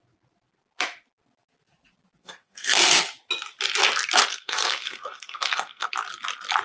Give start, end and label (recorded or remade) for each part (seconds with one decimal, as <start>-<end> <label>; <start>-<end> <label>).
0.0-2.2 recorded; 2.2-2.9 remade; 2.9-4.3 recorded; 4.3-5.9 remade; 5.9-6.6 recorded